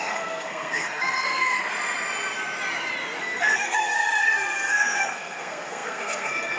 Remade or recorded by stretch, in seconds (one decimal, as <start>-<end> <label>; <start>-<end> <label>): 0.0-1.6 remade; 1.6-3.2 recorded; 3.2-6.6 remade